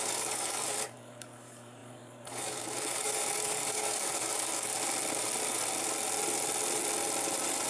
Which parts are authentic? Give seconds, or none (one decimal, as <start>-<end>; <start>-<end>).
4.7-7.7